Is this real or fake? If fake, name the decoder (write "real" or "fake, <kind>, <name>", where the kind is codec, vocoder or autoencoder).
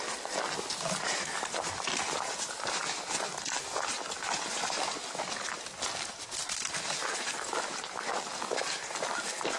real